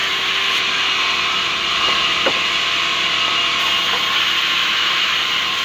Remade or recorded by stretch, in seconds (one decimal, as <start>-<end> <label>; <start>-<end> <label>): 0.0-4.6 recorded; 4.6-5.1 remade; 5.1-5.6 recorded